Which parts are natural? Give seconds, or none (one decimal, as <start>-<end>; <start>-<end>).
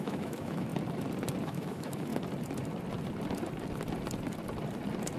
0.7-1.4; 2.1-5.2